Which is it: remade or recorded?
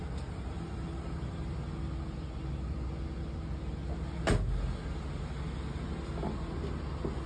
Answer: recorded